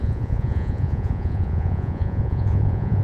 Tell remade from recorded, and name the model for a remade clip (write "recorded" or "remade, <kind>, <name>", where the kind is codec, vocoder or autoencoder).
remade, vocoder, Vocos